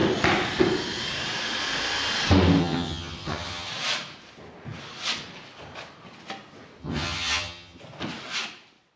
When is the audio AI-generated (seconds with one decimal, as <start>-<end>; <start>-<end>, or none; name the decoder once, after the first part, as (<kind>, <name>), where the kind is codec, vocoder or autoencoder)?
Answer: 2.6-3.7 (vocoder, HiFi-GAN); 6.8-7.8